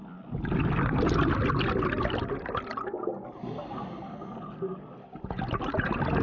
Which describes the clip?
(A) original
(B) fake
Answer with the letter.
A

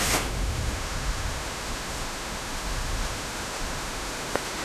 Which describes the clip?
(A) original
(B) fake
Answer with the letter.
B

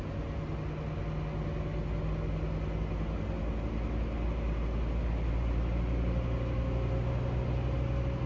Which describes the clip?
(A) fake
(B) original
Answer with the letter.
B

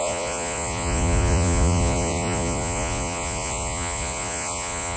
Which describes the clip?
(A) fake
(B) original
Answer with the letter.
A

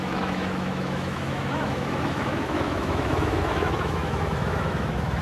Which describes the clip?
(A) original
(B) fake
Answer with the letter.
B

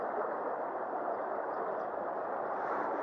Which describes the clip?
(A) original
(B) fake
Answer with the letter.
A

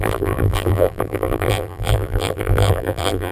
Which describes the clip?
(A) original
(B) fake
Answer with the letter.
B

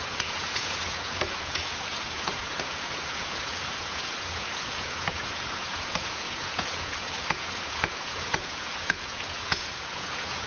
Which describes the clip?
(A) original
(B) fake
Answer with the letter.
B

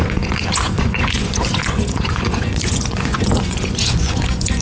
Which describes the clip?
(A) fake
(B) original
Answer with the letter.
A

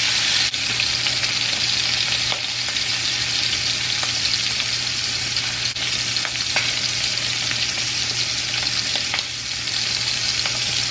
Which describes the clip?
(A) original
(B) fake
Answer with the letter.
A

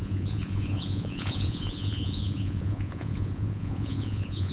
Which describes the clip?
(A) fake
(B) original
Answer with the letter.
A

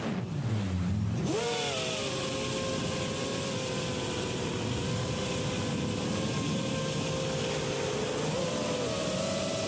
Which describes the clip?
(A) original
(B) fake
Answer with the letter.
A